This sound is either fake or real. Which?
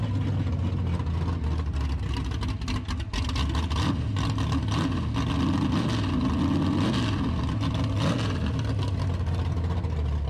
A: real